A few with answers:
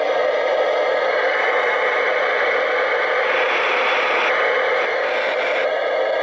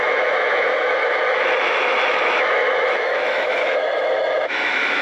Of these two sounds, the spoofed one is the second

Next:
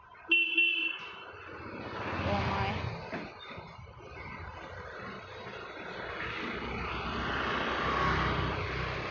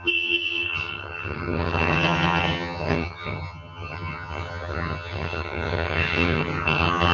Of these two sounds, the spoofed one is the second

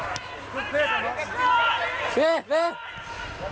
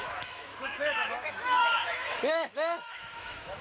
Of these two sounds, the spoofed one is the second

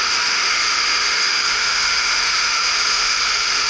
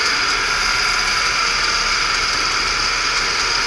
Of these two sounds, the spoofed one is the first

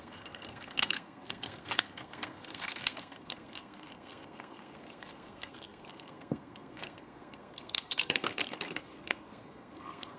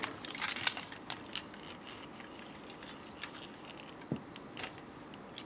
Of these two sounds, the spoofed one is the first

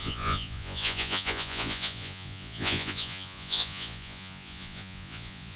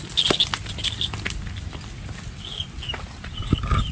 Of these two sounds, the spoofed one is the first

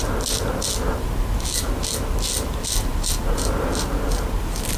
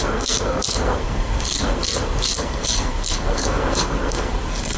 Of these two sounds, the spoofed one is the second